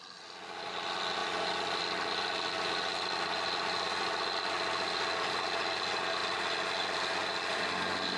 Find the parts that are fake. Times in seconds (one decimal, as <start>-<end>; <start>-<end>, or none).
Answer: 1.2-1.8